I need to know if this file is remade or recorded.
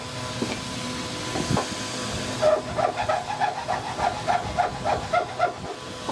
recorded